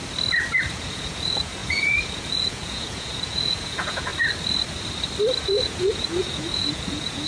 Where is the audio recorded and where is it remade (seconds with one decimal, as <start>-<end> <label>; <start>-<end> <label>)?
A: 0.0-0.7 recorded; 0.7-4.1 remade; 4.1-5.4 recorded; 5.4-7.3 remade